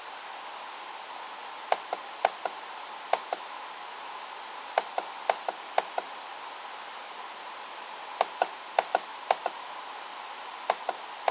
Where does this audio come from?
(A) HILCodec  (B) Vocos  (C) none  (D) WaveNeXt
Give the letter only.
C